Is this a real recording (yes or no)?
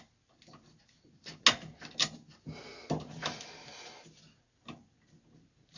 yes